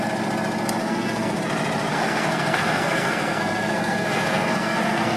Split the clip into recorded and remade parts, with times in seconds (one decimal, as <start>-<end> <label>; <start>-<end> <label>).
0.0-0.8 recorded; 0.8-1.4 remade; 1.4-1.9 recorded; 1.9-5.2 remade